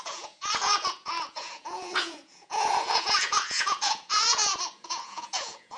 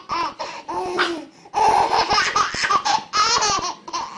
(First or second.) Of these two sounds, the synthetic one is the first